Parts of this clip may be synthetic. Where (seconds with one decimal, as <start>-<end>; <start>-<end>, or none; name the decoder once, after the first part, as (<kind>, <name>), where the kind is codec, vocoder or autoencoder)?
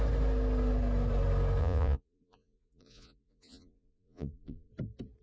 1.6-4.7 (vocoder, Vocos)